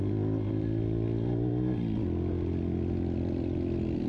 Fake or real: real